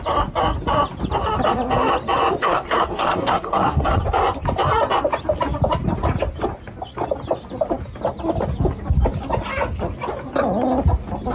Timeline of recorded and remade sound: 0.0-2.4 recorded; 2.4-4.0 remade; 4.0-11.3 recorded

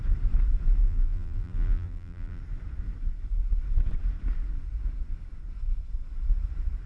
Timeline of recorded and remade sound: 0.0-0.8 recorded; 0.8-2.4 remade; 2.4-6.9 recorded

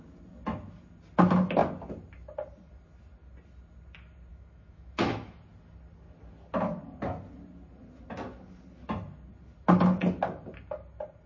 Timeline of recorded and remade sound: 0.0-4.3 recorded; 4.3-5.4 remade; 5.4-11.3 recorded

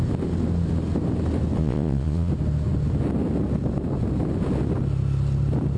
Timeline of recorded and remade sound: 0.0-1.6 recorded; 1.6-2.3 remade; 2.3-5.8 recorded

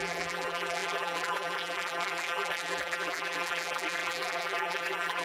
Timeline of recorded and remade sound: 0.0-5.2 remade

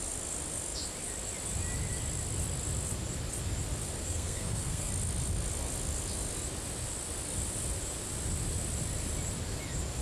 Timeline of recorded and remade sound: 0.0-4.0 recorded; 4.0-4.9 remade; 4.9-10.0 recorded

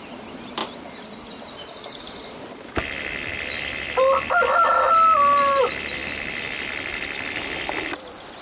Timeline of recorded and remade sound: 0.0-8.4 recorded